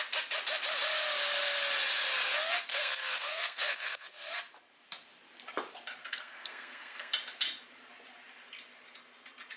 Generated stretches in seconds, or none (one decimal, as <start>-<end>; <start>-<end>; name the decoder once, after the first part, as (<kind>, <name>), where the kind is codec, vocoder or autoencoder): 2.7-4.3 (codec, SNAC); 6.0-7.1